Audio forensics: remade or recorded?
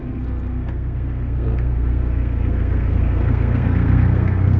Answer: remade